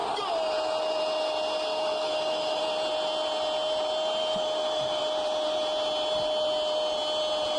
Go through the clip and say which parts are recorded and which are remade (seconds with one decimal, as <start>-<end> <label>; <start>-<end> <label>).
0.0-1.7 recorded; 1.7-2.6 remade; 2.6-4.2 recorded; 4.2-5.0 remade; 5.0-7.6 recorded